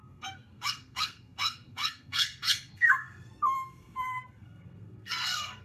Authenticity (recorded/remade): remade